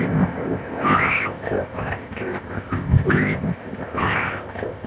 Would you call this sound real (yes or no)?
no